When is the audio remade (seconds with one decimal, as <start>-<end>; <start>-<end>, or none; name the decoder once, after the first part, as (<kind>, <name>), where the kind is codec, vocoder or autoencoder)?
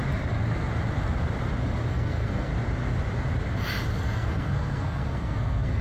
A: 1.9-2.5 (codec, SNAC); 3.9-5.8